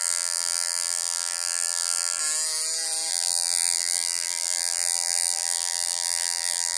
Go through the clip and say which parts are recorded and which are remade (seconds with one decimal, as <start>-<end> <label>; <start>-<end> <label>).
0.0-2.2 remade; 2.2-3.1 recorded; 3.1-6.8 remade